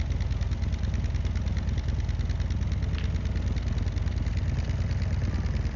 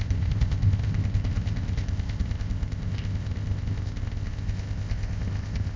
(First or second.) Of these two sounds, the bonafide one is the first